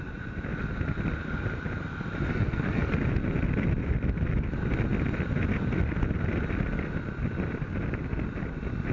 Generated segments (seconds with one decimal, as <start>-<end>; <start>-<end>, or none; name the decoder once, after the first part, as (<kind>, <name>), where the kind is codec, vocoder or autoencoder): 2.3-2.9 (codec, SNAC)